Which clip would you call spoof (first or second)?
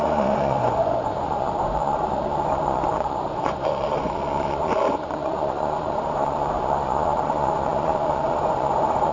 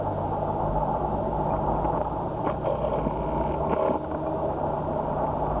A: first